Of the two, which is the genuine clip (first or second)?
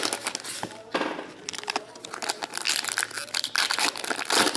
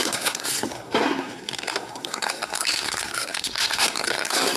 first